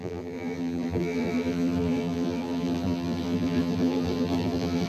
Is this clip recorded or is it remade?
remade